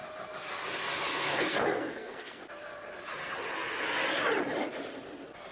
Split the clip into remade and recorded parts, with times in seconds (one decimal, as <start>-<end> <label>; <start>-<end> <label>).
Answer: 0.0-1.1 recorded; 1.1-2.4 remade; 2.4-5.5 recorded